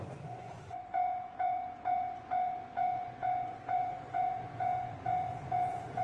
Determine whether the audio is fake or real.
fake